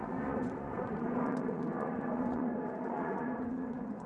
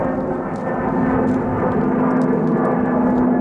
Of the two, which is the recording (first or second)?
second